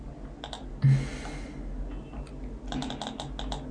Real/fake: real